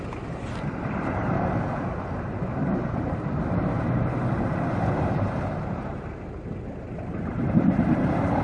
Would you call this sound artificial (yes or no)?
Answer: yes